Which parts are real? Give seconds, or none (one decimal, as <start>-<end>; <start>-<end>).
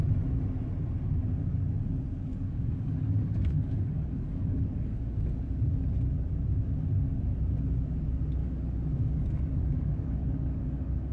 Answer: 0.0-2.3; 5.1-8.4